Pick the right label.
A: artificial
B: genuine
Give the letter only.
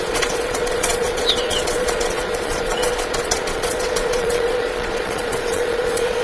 A